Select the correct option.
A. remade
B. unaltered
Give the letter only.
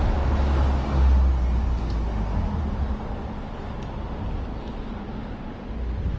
B